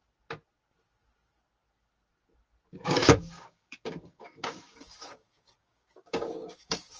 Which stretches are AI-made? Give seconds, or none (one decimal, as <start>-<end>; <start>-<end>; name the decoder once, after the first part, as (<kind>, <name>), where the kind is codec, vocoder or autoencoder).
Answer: 2.7-7.0 (codec, DAC)